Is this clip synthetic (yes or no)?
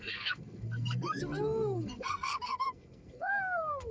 yes